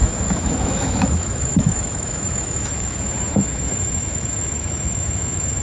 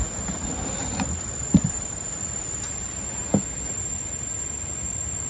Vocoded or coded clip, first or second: first